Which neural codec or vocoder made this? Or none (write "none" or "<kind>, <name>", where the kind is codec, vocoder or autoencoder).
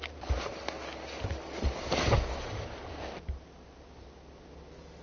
none